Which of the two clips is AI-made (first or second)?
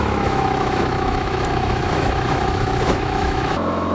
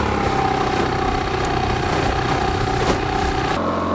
first